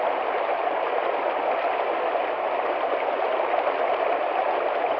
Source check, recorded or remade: recorded